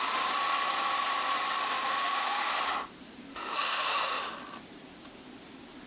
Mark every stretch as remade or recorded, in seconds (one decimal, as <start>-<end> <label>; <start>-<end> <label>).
0.0-1.6 recorded; 1.6-2.5 remade; 2.5-3.3 recorded; 3.3-4.2 remade; 4.2-5.9 recorded

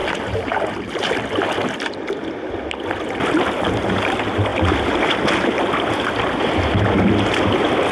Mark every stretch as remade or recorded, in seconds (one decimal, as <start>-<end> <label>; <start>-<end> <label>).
0.0-7.9 recorded

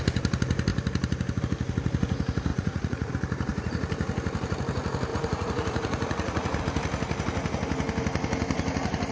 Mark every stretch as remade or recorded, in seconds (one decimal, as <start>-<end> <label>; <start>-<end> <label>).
0.0-2.5 recorded; 2.5-3.1 remade; 3.1-5.1 recorded; 5.1-6.6 remade; 6.6-9.1 recorded